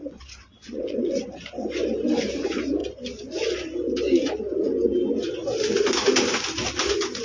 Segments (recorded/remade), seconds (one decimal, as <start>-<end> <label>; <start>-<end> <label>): 0.0-1.2 remade; 1.2-7.2 recorded